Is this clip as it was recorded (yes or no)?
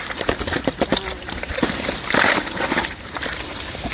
no